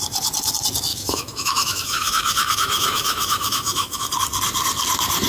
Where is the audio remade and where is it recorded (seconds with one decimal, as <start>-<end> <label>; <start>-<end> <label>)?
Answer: 0.0-0.9 recorded; 0.9-4.1 remade; 4.1-5.3 recorded